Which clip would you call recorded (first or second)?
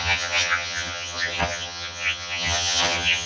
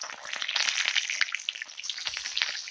second